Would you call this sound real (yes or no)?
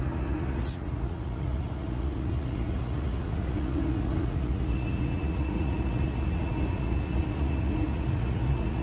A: no